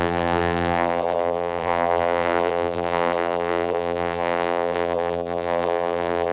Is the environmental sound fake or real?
fake